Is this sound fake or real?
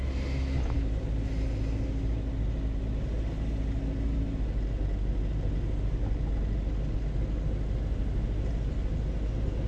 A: real